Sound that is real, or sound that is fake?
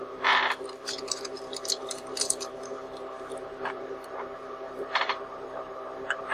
fake